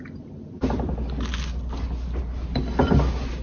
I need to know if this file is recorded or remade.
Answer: recorded